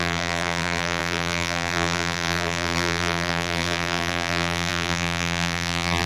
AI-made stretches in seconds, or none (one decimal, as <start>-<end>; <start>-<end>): 0.0-6.1